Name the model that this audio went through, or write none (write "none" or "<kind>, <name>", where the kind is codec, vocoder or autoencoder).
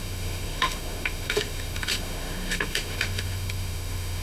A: autoencoder, DAC-VAE